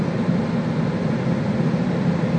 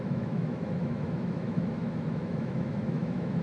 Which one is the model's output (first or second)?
second